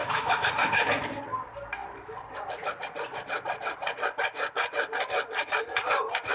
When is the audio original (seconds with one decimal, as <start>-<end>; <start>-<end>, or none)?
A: 0.5-6.3